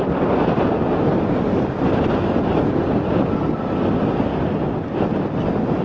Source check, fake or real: real